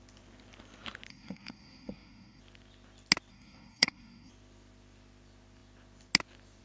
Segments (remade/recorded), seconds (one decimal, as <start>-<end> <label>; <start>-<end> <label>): 0.0-1.1 recorded; 1.1-2.4 remade; 2.4-3.3 recorded; 3.3-4.3 remade; 4.3-6.6 recorded